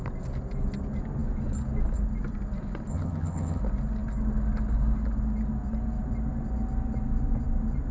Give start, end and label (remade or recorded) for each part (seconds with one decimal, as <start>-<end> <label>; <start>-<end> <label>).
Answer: 0.0-2.9 recorded; 2.9-3.6 remade; 3.6-7.9 recorded